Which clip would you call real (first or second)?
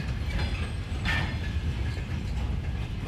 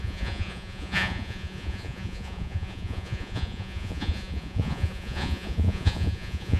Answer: first